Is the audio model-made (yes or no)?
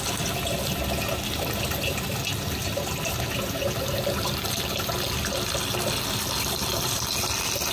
no